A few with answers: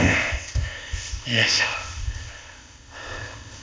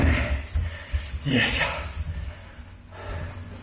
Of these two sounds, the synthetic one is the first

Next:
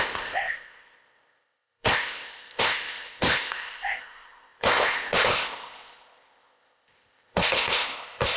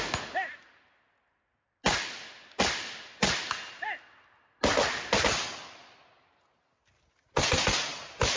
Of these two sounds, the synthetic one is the first